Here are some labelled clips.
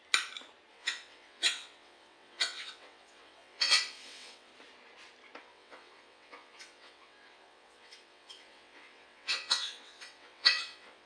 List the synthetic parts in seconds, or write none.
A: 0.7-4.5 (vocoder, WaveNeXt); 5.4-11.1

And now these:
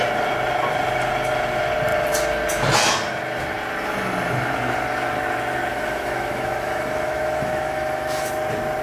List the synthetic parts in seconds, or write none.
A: 5.7-8.3 (autoencoder, DAC-VAE)

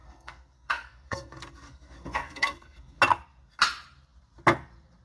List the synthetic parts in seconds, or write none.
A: 0.0-3.0 (codec, SNAC)